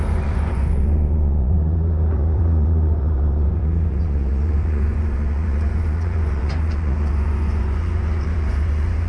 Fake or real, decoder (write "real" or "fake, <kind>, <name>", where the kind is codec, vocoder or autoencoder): fake, vocoder, Vocos